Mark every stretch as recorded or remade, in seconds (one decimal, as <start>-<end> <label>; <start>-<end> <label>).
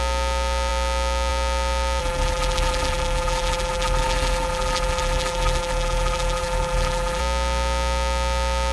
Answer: 0.0-2.0 recorded; 2.0-7.2 remade; 7.2-8.7 recorded